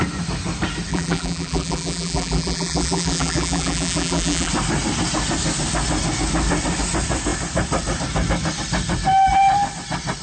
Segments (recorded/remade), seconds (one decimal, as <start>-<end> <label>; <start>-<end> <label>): 0.0-0.9 recorded; 0.9-4.5 remade; 4.5-10.2 recorded